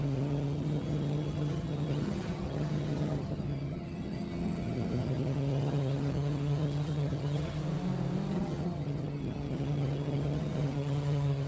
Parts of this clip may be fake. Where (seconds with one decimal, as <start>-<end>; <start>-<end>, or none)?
0.0-7.6; 8.3-11.5